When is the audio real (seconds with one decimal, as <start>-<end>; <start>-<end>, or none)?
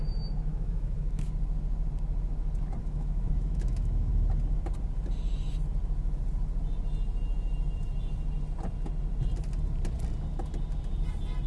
0.0-0.5; 1.3-2.8; 4.1-11.5